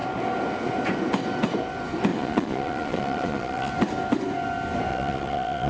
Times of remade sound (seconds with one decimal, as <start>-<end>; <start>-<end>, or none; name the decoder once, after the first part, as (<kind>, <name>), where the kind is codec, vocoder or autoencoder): 2.1-3.7 (vocoder, Vocos); 4.9-5.7